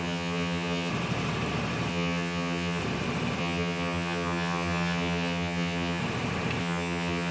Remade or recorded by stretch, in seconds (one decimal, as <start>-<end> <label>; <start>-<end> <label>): 0.0-0.9 remade; 0.9-1.9 recorded; 1.9-2.8 remade; 2.8-3.4 recorded; 3.4-6.0 remade; 6.0-6.6 recorded; 6.6-7.3 remade